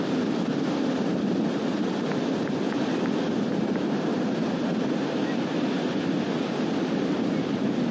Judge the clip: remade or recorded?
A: recorded